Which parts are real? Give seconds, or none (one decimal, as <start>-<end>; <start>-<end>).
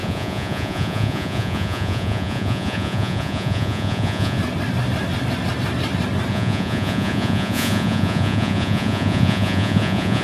4.4-6.3